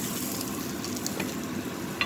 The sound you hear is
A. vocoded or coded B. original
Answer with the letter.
B